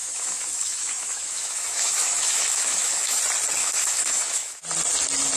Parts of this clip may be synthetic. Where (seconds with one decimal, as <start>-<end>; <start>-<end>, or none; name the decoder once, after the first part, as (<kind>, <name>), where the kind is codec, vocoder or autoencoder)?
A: 0.0-3.2 (autoencoder, DAC-VAE); 3.6-4.6